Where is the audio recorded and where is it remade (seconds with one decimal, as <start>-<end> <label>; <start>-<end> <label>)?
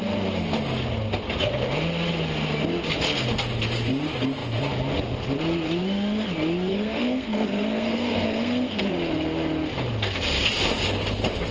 0.0-6.7 recorded; 6.7-8.8 remade; 8.8-11.5 recorded